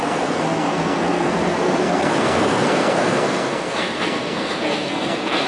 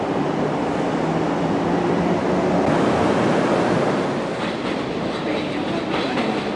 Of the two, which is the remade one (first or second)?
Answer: first